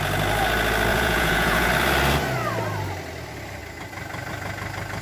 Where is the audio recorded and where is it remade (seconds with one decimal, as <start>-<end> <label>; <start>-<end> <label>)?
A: 0.0-0.9 recorded; 0.9-1.7 remade; 1.7-5.0 recorded